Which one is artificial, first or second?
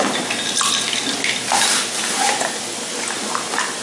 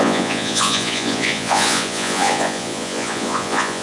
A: second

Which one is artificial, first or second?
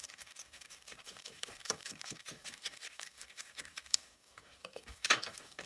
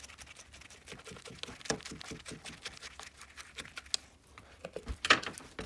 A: first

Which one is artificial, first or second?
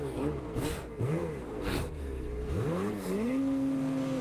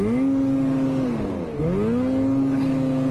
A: first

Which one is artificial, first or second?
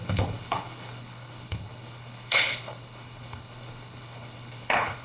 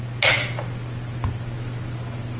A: first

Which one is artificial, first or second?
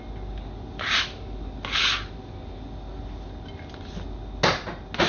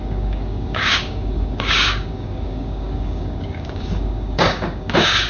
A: second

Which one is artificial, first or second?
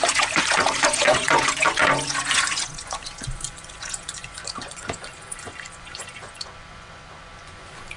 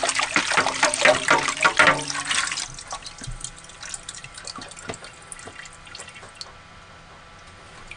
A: first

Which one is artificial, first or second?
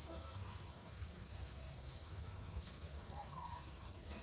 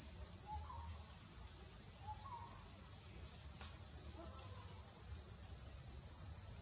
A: first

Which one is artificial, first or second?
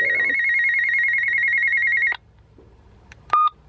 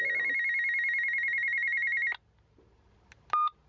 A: first